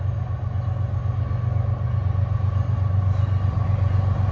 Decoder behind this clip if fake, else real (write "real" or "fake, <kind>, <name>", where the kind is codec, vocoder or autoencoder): real